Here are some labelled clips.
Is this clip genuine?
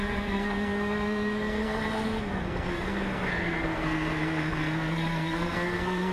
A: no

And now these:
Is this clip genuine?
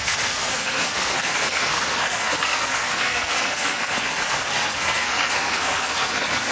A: no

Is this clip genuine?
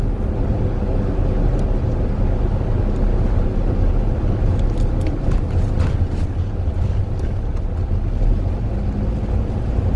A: yes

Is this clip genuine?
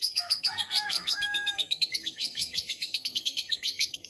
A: no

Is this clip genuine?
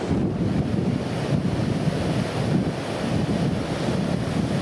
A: yes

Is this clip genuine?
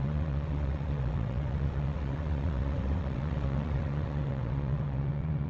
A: no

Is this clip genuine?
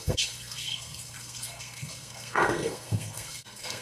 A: no